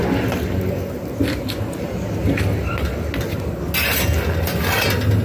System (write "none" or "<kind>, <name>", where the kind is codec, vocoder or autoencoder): none